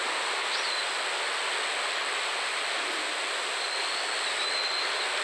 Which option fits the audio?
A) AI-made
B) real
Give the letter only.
B